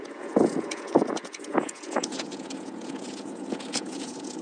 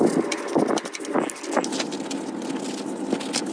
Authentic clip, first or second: second